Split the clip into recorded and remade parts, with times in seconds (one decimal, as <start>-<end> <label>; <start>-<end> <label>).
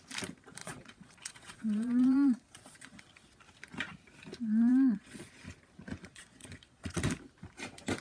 0.0-0.6 recorded; 0.6-3.0 remade; 3.0-4.7 recorded; 4.7-5.3 remade; 5.3-6.0 recorded; 6.0-7.0 remade; 7.0-8.0 recorded